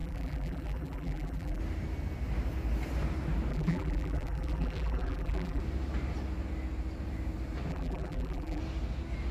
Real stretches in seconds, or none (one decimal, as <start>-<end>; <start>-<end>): 1.6-3.5; 5.6-7.7; 8.6-9.3